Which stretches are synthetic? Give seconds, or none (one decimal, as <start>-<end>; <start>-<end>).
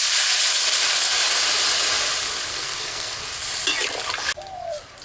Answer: 2.5-3.2